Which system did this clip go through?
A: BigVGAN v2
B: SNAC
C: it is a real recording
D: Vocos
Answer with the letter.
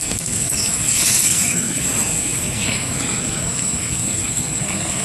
B